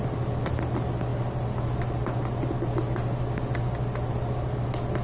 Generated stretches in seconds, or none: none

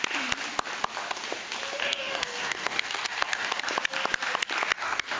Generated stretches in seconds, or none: 1.8-3.6 (codec, DAC); 4.7-5.2

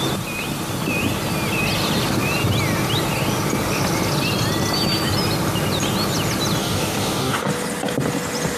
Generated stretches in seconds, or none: 6.6-7.5 (codec, DAC)

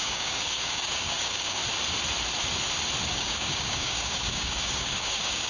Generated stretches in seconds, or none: 0.0-1.6 (codec, DAC); 3.1-5.5

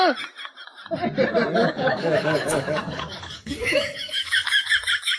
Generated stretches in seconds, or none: 1.6-4.7 (codec, DAC)

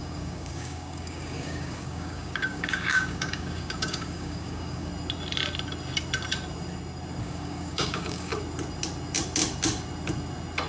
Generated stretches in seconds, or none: 0.0-4.9 (codec, DAC); 7.2-8.3